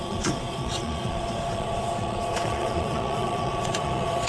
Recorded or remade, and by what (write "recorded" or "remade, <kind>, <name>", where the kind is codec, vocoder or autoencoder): remade, vocoder, Vocos